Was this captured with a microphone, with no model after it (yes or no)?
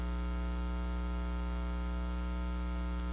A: yes